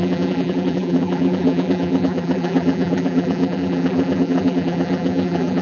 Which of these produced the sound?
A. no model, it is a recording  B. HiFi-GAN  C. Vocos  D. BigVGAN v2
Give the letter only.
D